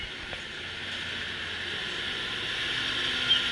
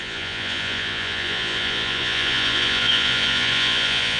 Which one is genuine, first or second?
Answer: first